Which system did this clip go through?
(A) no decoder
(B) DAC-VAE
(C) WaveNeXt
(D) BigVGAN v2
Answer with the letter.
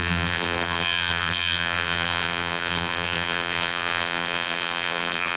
D